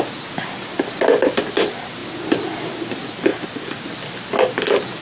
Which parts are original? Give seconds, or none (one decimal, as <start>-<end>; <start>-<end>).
0.0-5.0